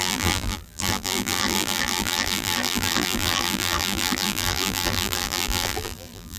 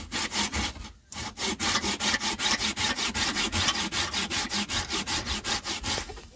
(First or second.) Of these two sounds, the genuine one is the second